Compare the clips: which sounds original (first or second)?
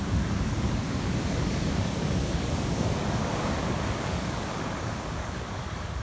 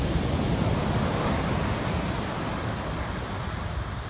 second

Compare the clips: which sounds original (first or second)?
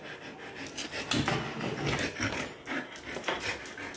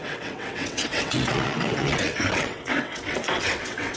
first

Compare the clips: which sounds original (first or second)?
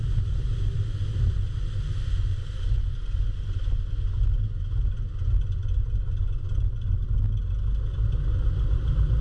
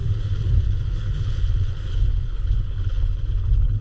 first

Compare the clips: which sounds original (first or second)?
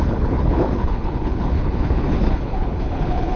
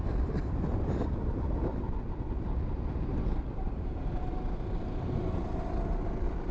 second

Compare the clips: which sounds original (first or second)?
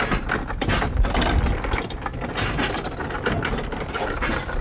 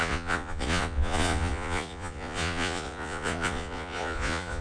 first